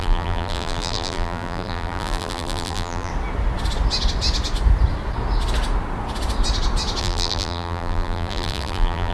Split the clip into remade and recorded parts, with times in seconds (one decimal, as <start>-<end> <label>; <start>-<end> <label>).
0.0-3.1 remade; 3.1-7.0 recorded; 7.0-9.1 remade